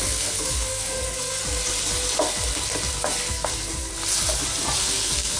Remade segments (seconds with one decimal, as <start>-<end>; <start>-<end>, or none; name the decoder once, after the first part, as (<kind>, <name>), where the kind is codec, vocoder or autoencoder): 0.0-1.4 (codec, SNAC); 3.3-3.9; 4.8-5.4